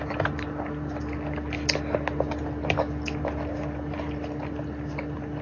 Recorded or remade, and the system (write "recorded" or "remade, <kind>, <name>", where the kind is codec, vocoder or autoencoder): recorded